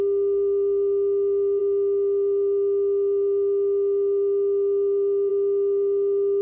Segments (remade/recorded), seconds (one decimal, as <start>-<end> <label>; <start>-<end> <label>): 0.0-6.4 recorded